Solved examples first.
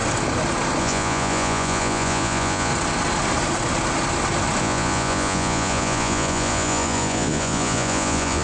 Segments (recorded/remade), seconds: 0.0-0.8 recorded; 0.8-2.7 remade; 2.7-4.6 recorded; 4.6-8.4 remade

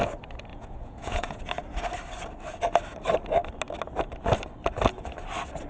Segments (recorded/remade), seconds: 0.0-0.5 recorded; 0.5-1.5 remade; 1.5-5.7 recorded

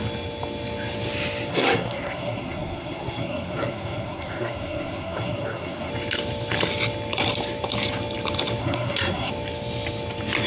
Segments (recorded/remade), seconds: 0.0-1.5 recorded; 1.5-5.9 remade; 5.9-8.6 recorded; 8.6-9.3 remade; 9.3-10.5 recorded